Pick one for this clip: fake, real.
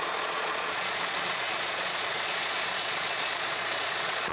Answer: fake